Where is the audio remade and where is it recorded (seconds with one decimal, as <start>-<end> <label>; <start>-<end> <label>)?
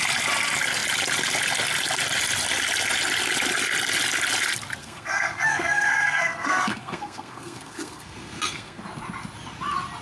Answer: 0.0-4.8 recorded; 4.8-8.8 remade; 8.8-10.0 recorded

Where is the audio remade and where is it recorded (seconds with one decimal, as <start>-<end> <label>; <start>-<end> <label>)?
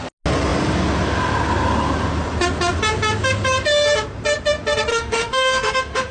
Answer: 0.0-4.9 recorded; 4.9-6.1 remade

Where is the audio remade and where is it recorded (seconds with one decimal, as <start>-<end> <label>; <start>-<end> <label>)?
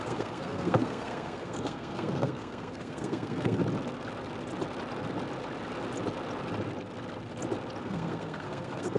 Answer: 0.0-3.6 remade; 3.6-7.8 recorded; 7.8-9.0 remade